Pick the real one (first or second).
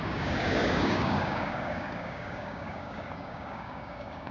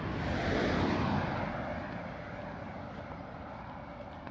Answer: second